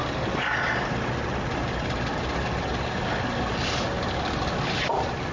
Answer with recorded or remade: recorded